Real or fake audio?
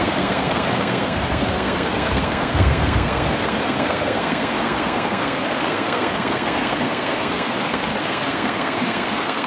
fake